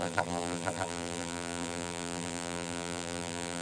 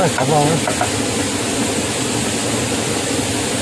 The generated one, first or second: first